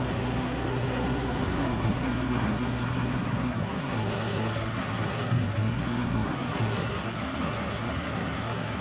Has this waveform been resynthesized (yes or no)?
yes